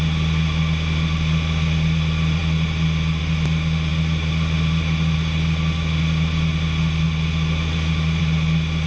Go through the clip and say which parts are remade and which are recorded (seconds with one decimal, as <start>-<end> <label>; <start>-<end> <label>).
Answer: 0.0-8.9 recorded